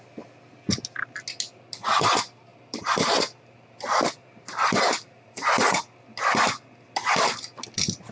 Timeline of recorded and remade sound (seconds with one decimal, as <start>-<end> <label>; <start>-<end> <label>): 0.0-2.5 recorded; 2.5-5.8 remade; 5.8-8.1 recorded